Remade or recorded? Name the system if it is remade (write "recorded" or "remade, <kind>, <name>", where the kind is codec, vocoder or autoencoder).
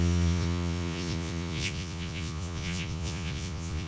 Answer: remade, vocoder, Vocos